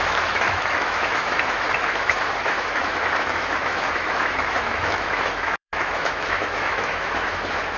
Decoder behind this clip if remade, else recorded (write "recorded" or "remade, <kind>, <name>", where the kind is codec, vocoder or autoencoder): remade, autoencoder, DAC-VAE